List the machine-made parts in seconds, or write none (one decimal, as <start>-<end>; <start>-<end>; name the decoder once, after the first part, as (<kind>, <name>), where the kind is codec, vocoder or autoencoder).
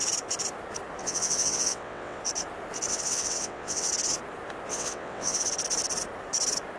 1.0-2.2 (vocoder, WaveNeXt); 2.9-3.9; 4.7-5.4